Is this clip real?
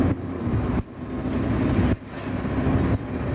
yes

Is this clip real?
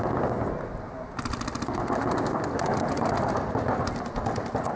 yes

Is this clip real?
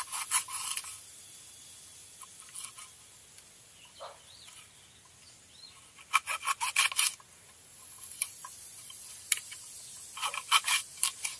yes